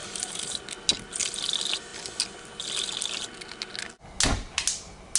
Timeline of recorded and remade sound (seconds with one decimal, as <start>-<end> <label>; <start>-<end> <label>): 0.0-0.6 remade; 0.6-5.2 recorded